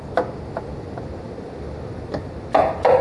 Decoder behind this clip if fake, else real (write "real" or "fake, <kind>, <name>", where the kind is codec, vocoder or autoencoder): real